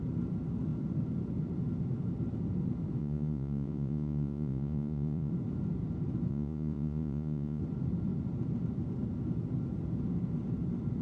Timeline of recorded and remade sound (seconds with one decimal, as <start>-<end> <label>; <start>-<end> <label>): 0.0-3.0 recorded; 3.0-5.3 remade; 5.3-6.3 recorded; 6.3-7.6 remade; 7.6-11.0 recorded